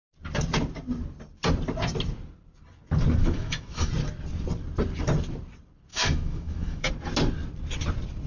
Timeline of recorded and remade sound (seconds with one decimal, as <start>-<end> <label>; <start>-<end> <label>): 0.0-3.2 recorded; 3.2-3.9 remade; 3.9-5.9 recorded; 5.9-6.9 remade; 6.9-8.3 recorded